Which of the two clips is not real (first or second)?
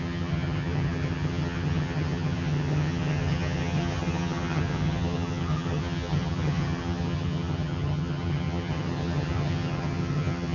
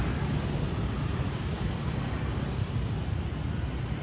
first